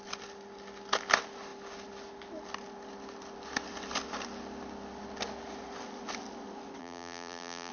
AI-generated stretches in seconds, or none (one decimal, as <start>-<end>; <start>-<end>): 6.8-7.7